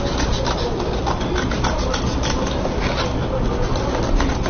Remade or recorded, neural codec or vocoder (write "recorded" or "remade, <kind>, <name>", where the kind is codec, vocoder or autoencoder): recorded